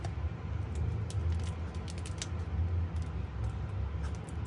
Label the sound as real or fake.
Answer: real